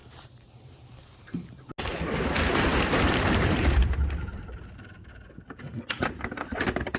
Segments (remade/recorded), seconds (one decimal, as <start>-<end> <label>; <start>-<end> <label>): 0.0-1.7 remade; 1.7-2.7 recorded; 2.7-5.3 remade; 5.3-7.0 recorded